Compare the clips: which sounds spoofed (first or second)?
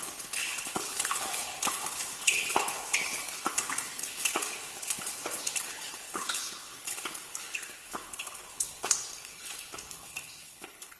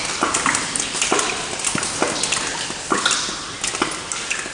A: first